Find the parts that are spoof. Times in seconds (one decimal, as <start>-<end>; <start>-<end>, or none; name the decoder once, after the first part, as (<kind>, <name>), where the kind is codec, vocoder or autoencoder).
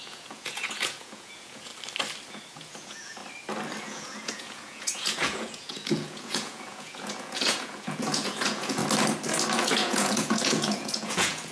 0.0-1.7 (vocoder, Vocos); 2.3-3.2; 3.8-8.8; 9.6-11.5